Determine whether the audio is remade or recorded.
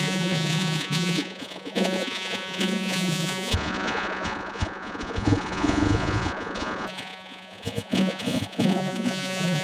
remade